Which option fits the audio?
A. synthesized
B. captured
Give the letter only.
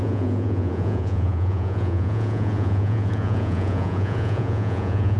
A